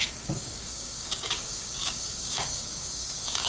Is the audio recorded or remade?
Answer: remade